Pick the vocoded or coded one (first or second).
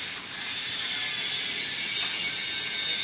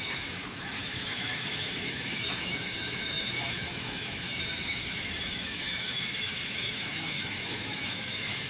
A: second